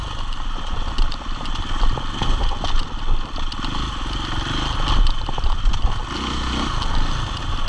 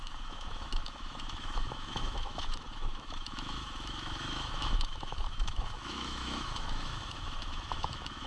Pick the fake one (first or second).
second